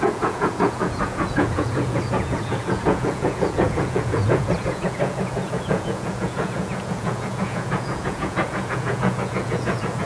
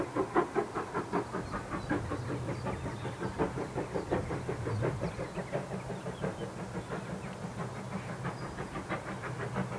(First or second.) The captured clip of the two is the second